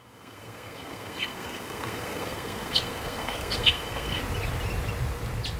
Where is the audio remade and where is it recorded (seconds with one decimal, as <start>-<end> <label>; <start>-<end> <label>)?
0.0-4.2 remade; 4.2-5.6 recorded